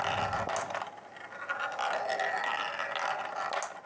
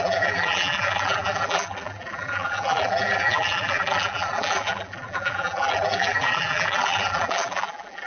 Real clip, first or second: first